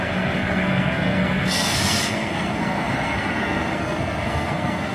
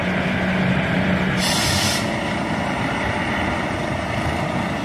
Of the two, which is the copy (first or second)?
first